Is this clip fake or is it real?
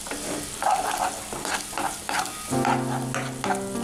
real